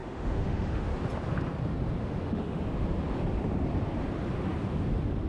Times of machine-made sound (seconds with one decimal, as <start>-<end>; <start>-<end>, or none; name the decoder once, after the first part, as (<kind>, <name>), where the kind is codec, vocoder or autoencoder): 0.0-0.9 (autoencoder, DAC-VAE); 2.0-2.6